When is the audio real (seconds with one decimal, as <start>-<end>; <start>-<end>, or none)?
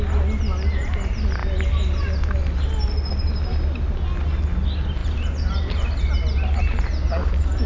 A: 0.0-7.7